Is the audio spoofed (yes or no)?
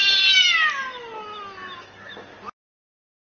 no